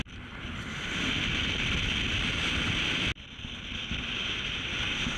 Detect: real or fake real